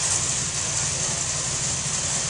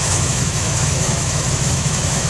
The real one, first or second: first